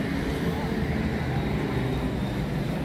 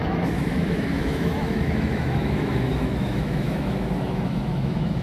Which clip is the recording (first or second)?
first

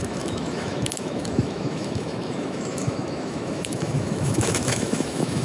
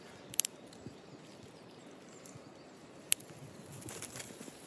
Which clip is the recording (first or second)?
second